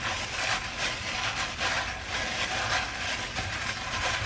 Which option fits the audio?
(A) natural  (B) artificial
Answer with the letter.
A